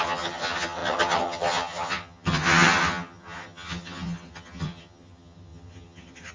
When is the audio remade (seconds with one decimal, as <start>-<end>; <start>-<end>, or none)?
0.0-6.3